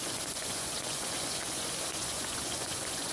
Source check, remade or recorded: remade